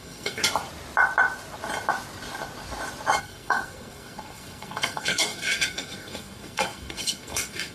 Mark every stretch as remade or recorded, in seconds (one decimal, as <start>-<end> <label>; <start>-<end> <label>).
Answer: 0.0-0.4 remade; 0.4-3.2 recorded; 3.2-7.7 remade